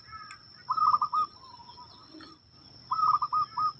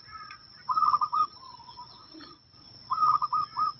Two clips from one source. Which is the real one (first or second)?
first